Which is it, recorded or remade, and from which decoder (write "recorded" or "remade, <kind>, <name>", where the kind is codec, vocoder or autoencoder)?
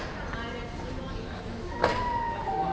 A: recorded